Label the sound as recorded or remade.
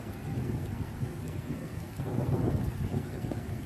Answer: remade